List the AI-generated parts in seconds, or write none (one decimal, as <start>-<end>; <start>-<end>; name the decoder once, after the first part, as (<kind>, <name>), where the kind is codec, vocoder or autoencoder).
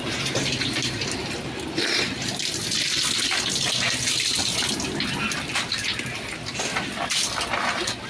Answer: none